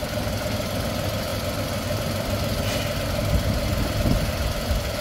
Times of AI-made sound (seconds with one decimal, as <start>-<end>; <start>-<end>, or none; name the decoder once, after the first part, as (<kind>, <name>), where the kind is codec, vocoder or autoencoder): none